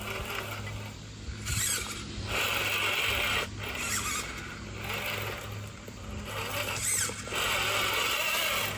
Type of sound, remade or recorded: recorded